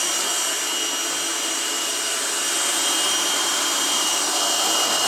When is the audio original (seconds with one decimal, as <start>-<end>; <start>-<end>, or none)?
0.0-1.3; 1.9-2.8; 4.4-5.1